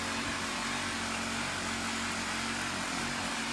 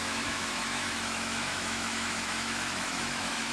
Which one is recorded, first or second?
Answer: first